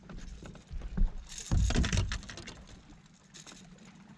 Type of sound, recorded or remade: recorded